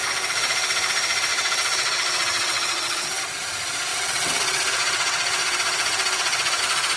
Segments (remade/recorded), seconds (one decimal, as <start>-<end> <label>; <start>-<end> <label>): 0.0-1.3 recorded; 1.3-3.2 remade; 3.2-3.9 recorded; 3.9-6.6 remade; 6.6-7.0 recorded